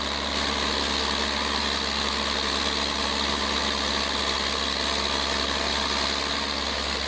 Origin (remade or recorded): recorded